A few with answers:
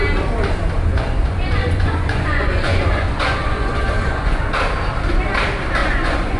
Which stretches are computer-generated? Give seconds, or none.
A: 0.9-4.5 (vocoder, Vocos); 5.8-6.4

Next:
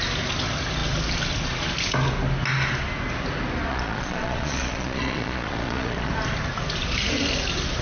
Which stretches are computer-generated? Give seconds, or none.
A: 3.7-6.1 (vocoder, Vocos)